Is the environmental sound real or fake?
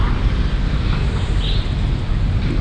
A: real